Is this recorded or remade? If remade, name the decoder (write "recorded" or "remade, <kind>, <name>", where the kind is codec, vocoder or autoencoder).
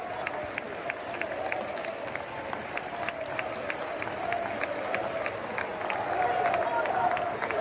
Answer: recorded